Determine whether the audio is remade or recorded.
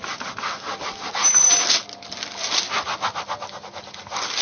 recorded